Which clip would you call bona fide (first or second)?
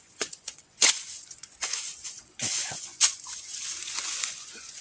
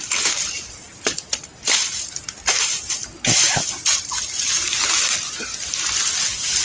second